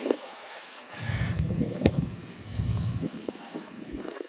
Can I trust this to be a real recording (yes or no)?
no